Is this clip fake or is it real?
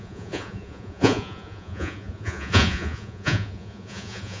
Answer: fake